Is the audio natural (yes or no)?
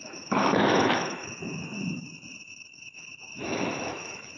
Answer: no